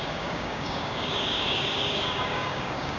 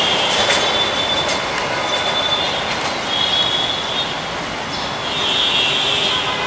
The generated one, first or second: first